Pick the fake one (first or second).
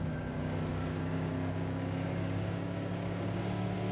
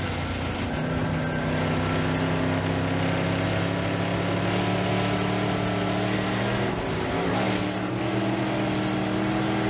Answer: first